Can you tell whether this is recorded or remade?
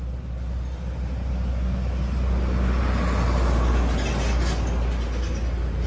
recorded